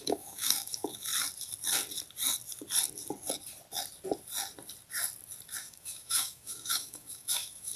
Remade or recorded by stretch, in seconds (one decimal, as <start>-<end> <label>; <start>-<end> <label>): 0.0-1.1 remade; 1.1-5.6 recorded; 5.6-7.8 remade